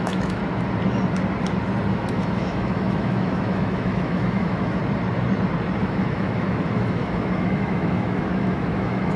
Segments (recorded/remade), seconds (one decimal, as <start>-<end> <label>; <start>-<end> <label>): 0.0-0.4 remade; 0.4-1.9 recorded; 1.9-4.8 remade; 4.8-5.8 recorded; 5.8-9.2 remade